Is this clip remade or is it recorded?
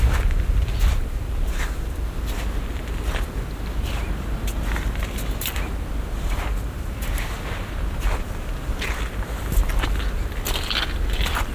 recorded